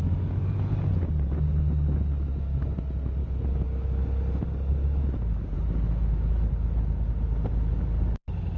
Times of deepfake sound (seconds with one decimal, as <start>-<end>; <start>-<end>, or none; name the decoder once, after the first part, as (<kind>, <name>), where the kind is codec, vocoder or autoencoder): none

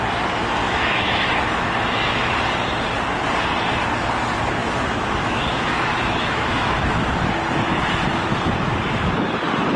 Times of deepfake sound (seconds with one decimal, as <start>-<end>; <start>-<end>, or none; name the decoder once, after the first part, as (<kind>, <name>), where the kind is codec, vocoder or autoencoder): 0.6-2.3 (autoencoder, DAC-VAE); 4.6-7.1

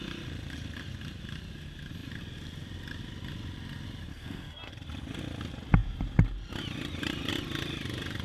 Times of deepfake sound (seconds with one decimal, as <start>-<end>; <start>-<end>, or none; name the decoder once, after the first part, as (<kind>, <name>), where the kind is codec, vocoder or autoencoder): 4.1-4.7 (codec, SNAC)

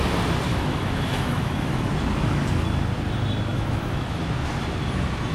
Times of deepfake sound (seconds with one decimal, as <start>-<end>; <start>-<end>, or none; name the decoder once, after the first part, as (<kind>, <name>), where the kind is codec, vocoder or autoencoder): 0.5-1.9 (autoencoder, DAC-VAE); 3.5-4.2

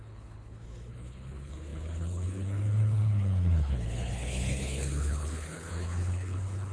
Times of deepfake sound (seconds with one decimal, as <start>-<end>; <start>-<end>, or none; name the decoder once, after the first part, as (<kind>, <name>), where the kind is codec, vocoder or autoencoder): 0.0-6.7 (codec, HILCodec)

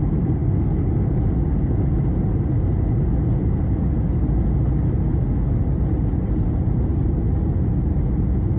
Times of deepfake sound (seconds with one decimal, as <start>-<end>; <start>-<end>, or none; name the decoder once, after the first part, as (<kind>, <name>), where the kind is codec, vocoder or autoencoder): none

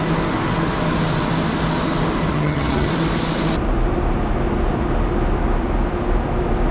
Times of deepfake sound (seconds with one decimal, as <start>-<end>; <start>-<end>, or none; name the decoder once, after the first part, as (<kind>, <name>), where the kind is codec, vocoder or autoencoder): 2.3-2.9 (vocoder, HiFi-GAN)